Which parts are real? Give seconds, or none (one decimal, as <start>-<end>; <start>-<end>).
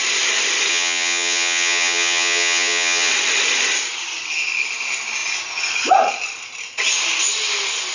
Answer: 0.0-0.7; 3.1-7.9